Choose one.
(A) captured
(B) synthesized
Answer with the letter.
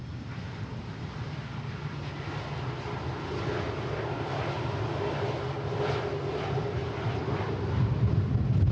A